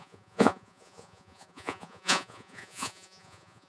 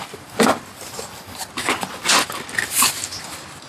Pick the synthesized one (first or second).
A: first